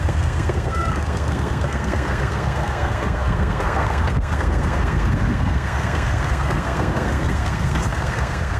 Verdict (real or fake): fake